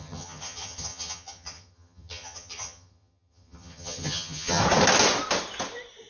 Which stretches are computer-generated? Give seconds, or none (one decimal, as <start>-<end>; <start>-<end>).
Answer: 0.0-4.6